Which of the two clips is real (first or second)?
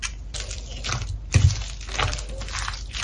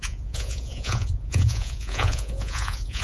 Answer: first